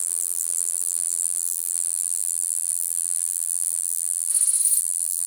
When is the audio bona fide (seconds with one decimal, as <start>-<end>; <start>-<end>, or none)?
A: 4.3-4.8